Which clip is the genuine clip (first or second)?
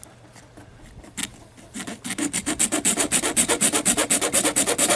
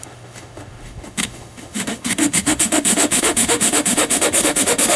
first